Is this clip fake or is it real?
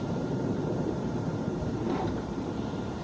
fake